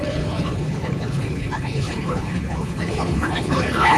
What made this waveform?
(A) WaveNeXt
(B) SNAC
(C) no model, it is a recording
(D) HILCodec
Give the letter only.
D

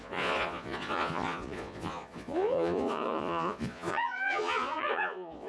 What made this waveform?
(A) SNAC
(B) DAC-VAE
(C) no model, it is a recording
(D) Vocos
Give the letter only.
D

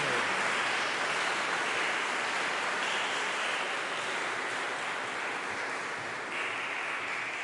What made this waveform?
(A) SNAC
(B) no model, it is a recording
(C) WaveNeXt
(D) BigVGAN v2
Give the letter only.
B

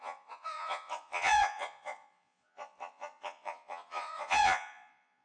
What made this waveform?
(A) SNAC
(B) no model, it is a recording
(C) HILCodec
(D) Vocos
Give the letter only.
D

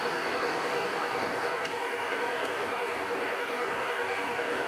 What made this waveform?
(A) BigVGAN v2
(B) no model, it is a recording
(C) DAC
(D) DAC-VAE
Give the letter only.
C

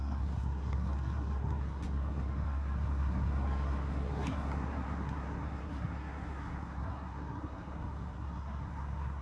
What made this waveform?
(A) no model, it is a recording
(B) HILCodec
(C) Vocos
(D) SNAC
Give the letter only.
D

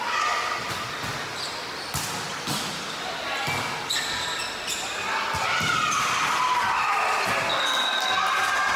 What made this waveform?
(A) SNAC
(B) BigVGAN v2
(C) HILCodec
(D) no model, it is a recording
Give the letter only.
D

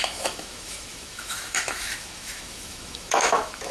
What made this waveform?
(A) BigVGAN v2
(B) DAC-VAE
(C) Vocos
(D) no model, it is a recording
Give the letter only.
B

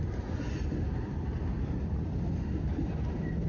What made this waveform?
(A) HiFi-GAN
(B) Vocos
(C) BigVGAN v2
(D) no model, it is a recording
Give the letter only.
D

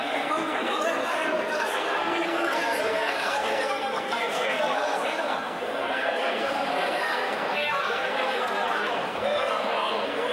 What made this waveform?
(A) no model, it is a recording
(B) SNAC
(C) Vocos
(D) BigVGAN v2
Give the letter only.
B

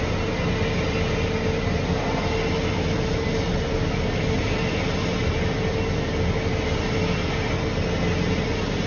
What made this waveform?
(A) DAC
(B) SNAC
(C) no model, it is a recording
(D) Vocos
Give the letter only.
C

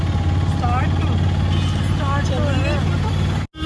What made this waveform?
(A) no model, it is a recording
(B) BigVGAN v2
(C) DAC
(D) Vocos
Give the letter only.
A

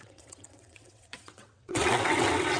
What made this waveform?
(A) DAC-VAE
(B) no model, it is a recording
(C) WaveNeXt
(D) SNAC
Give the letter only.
C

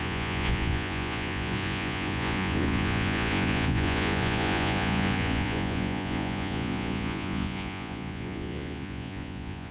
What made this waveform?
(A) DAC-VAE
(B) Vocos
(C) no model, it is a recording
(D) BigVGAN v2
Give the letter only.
B